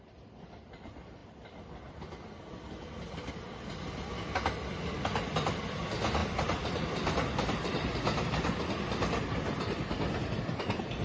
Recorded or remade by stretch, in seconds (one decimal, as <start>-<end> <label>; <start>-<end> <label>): 0.0-11.0 recorded